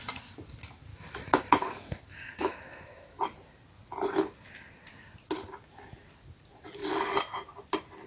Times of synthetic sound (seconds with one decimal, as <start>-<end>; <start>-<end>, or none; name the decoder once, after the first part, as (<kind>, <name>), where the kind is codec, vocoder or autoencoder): 0.9-3.2 (autoencoder, DAC-VAE)